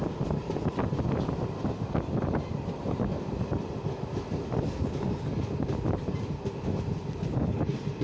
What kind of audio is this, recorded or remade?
recorded